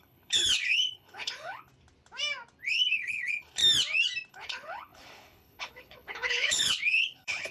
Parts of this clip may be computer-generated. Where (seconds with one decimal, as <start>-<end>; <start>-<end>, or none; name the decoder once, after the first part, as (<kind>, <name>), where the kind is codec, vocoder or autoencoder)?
0.0-1.7 (codec, HILCodec); 2.6-3.6; 4.3-7.5